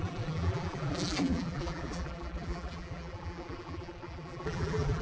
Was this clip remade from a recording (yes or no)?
yes